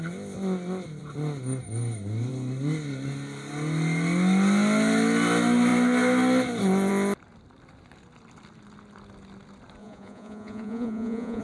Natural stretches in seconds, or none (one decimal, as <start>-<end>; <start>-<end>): 0.0-9.8